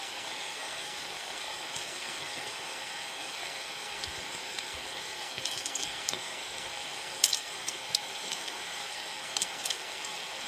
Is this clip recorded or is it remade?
remade